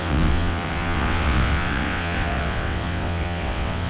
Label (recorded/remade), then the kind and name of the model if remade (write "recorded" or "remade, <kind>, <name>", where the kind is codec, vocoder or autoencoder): remade, vocoder, WaveNeXt